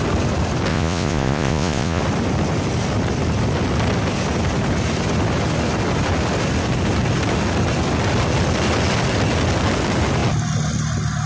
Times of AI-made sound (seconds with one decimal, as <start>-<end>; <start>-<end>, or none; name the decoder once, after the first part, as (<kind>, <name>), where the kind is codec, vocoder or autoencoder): 0.7-2.0 (vocoder, Vocos)

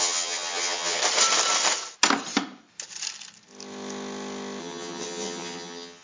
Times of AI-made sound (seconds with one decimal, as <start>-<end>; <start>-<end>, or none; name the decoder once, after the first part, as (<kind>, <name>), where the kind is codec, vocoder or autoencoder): 0.0-1.0 (vocoder, HiFi-GAN); 4.6-6.0